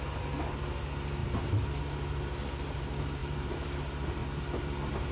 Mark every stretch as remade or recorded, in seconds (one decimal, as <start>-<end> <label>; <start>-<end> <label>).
0.0-3.2 recorded; 3.2-3.8 remade; 3.8-5.1 recorded